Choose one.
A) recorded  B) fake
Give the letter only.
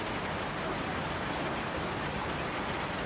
A